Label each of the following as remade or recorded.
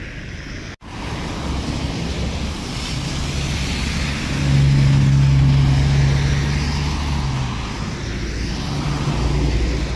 recorded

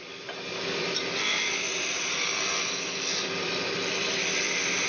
recorded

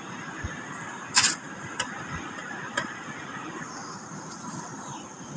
recorded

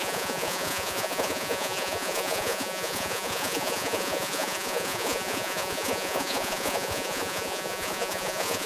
remade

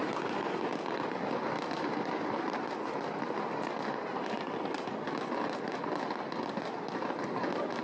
recorded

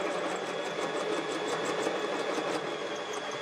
recorded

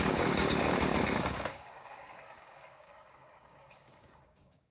remade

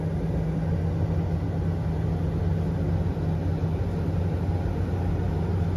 recorded